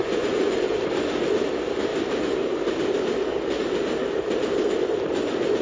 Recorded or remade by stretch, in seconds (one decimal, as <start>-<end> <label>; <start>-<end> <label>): 0.0-0.6 remade; 0.6-5.6 recorded